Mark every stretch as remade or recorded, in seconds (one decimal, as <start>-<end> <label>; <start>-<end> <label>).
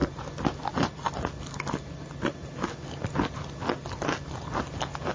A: 0.0-5.1 recorded